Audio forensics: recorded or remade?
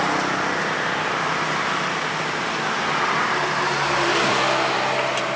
recorded